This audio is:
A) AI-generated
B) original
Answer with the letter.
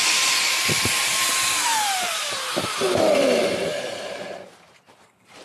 A